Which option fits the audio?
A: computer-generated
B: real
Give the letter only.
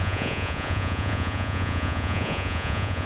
A